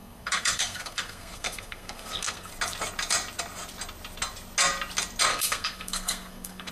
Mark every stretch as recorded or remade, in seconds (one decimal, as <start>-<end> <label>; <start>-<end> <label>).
0.0-2.5 remade; 2.5-5.3 recorded; 5.3-6.7 remade